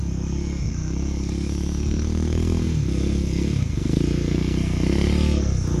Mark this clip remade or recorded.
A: remade